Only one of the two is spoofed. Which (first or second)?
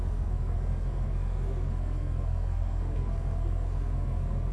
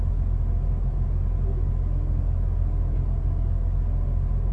first